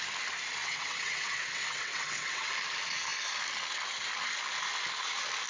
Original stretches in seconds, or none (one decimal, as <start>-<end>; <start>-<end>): 0.0-0.6; 2.5-5.5